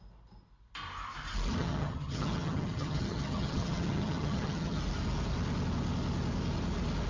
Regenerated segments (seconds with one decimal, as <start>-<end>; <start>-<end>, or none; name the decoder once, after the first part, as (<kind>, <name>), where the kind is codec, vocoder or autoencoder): 1.6-4.8 (vocoder, HiFi-GAN)